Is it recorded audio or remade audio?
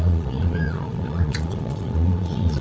remade